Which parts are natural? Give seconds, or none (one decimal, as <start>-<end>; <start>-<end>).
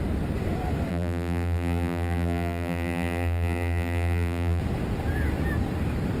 0.0-0.9; 4.6-6.2